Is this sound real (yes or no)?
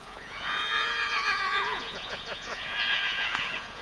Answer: no